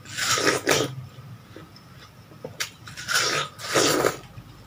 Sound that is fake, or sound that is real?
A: real